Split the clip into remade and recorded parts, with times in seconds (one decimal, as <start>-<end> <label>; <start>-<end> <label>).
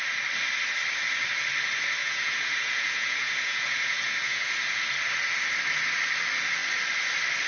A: 0.0-2.0 recorded; 2.0-4.8 remade; 4.8-7.5 recorded